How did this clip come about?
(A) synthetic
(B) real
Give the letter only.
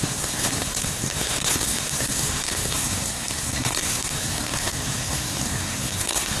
A